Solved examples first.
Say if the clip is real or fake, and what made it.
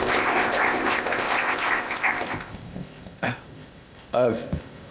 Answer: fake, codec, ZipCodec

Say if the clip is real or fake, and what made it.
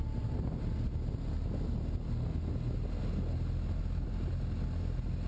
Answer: real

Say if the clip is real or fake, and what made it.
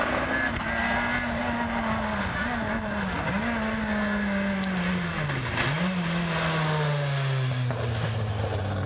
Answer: real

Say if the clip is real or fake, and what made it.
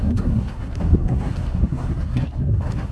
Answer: fake, codec, SNAC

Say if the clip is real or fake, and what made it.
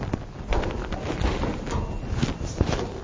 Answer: real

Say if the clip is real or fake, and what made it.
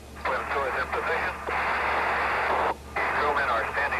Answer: real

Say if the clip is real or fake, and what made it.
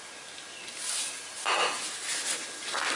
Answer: real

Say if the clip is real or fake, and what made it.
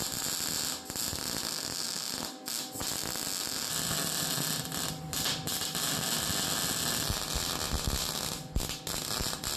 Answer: real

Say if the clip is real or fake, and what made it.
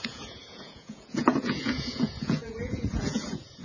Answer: fake, vocoder, Vocos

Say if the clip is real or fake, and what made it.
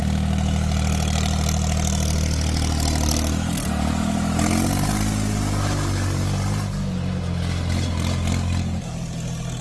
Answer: real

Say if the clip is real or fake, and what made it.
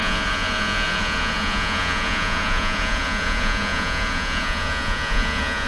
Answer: fake, vocoder, Vocos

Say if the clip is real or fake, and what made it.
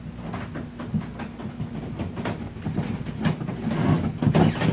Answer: real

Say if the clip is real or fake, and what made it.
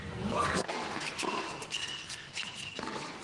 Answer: fake, codec, SNAC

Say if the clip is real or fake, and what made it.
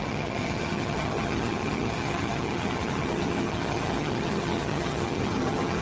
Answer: fake, vocoder, HiFi-GAN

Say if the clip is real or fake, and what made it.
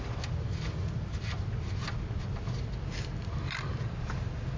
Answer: real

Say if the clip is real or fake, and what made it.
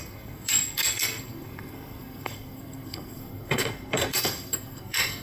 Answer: fake, codec, SNAC